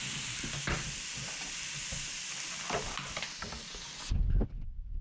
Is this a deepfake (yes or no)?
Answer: no